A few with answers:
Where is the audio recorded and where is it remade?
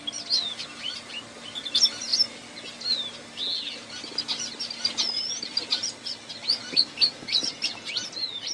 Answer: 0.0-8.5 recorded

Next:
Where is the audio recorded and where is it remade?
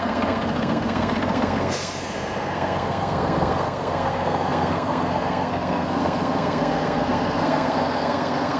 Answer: 0.0-8.6 remade